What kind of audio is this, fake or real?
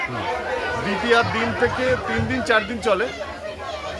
real